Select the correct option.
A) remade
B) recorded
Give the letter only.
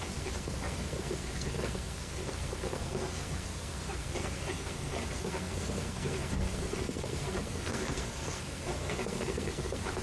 A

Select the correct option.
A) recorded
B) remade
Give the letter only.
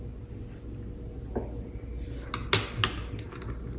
A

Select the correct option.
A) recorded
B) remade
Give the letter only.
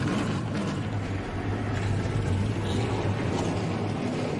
A